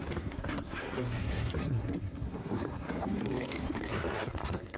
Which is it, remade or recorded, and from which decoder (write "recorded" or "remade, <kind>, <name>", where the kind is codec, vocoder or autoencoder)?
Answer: remade, codec, SNAC